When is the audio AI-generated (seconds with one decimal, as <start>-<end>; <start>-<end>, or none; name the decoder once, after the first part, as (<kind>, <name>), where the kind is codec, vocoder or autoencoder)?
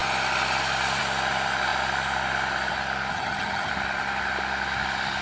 3.1-3.7 (vocoder, HiFi-GAN)